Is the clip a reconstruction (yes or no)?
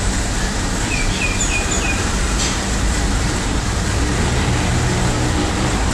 yes